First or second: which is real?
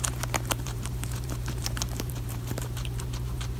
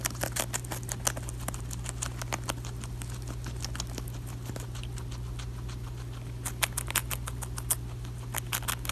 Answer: second